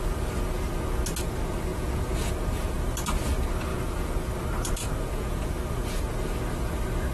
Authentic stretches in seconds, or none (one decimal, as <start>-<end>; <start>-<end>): 0.0-1.7; 2.3-3.7; 4.3-4.8; 6.1-7.1